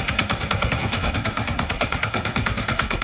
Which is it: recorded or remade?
remade